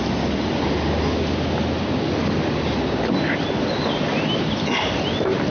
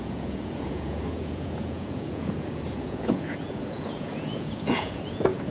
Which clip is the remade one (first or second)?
second